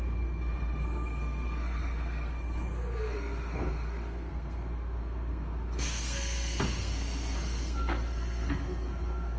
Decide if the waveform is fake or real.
fake